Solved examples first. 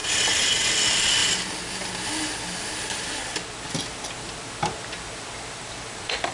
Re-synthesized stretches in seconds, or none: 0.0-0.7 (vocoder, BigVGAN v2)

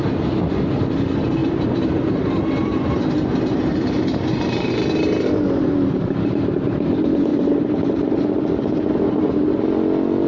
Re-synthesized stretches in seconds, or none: 1.4-4.7 (vocoder, BigVGAN v2); 7.3-8.2

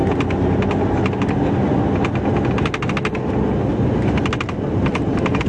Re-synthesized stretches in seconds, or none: 3.7-4.3 (vocoder, BigVGAN v2)

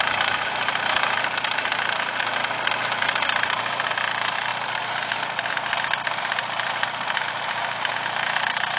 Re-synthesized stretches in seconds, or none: 0.0-2.4 (vocoder, BigVGAN v2); 3.0-4.5; 6.2-8.8